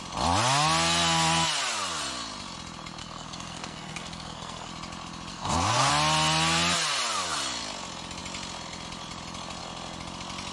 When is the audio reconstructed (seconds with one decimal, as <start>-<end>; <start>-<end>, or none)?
3.0-4.7; 5.3-5.9